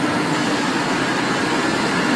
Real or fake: real